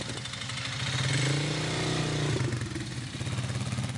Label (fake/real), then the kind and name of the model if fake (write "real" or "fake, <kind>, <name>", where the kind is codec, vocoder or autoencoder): real